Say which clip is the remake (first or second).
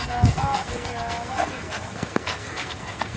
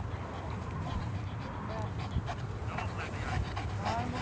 first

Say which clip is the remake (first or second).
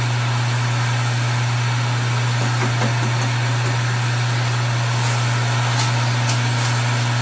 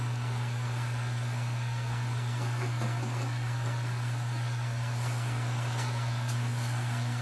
second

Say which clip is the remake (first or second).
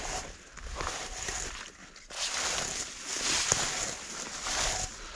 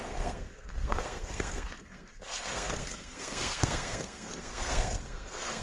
second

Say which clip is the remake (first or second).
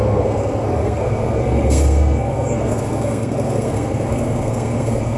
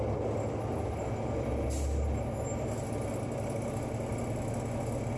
first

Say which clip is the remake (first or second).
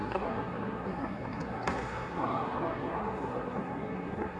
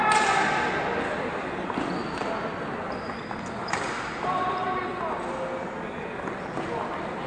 first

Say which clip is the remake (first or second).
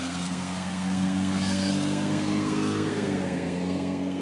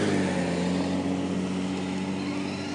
first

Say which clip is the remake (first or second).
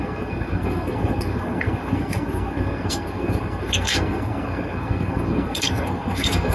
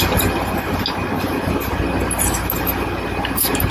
first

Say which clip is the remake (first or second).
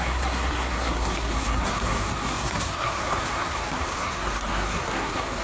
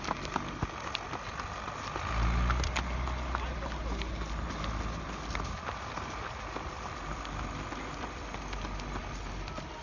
first